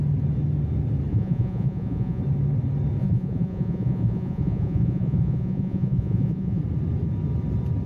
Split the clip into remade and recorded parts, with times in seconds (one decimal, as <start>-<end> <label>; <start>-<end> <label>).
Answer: 0.0-1.1 recorded; 1.1-2.2 remade; 2.2-3.0 recorded; 3.0-6.6 remade; 6.6-7.9 recorded